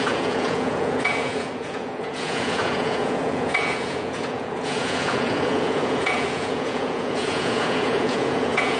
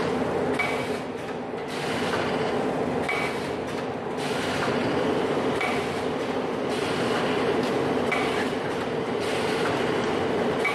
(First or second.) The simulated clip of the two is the first